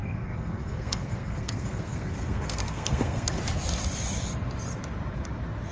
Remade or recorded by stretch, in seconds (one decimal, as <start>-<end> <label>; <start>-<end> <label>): 0.0-3.4 remade; 3.4-5.7 recorded